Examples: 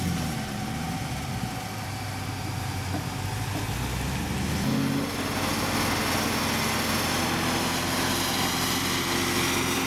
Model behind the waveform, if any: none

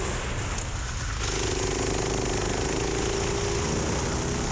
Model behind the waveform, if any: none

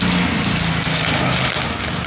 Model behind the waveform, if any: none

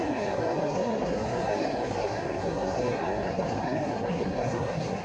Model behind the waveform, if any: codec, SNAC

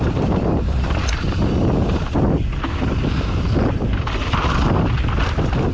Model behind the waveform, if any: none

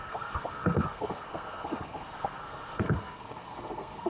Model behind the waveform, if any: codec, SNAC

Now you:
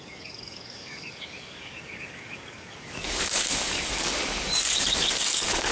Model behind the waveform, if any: codec, DAC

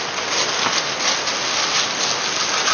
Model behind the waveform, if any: none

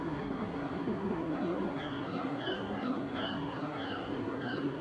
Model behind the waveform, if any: codec, SNAC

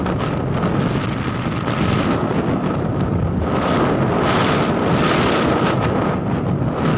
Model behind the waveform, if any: none